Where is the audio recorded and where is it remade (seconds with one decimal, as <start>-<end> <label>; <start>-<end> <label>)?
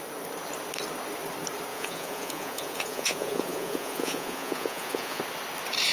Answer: 0.0-1.7 recorded; 1.7-5.2 remade; 5.2-5.9 recorded